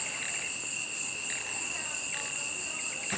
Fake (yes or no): no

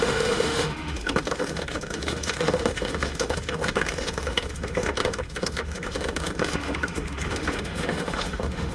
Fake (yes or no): yes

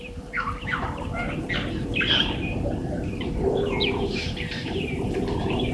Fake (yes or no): yes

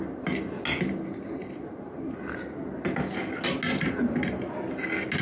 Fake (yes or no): no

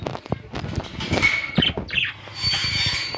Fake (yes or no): no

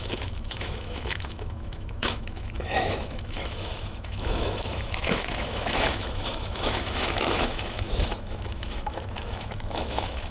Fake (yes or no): yes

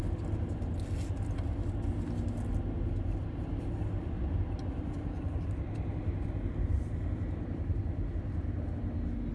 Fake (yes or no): no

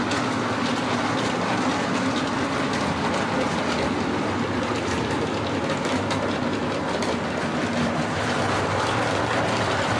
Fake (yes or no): no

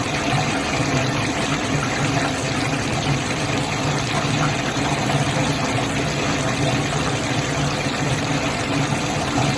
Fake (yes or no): no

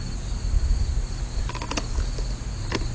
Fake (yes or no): no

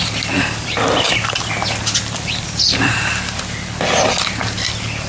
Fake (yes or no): no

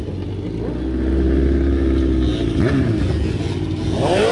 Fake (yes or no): no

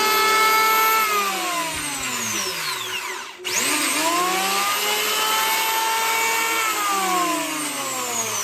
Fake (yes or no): no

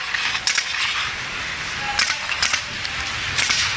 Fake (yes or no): no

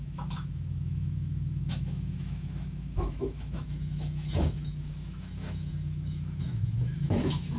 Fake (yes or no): yes